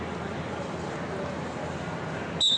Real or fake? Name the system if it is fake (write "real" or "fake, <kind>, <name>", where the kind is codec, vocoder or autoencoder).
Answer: real